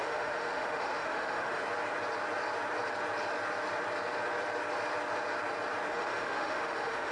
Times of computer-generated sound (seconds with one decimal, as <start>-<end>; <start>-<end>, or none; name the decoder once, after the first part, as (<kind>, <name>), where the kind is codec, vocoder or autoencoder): 0.0-1.6 (autoencoder, DAC-VAE); 5.9-7.1